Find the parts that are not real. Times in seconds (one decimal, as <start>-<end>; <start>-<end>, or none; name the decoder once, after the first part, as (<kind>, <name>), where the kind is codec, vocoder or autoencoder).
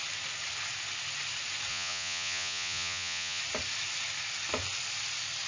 1.7-3.4 (vocoder, Vocos)